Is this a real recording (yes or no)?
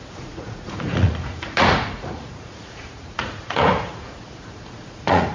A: no